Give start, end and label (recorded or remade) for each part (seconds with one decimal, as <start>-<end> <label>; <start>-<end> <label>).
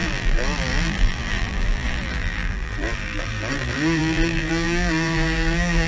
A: 0.0-5.9 remade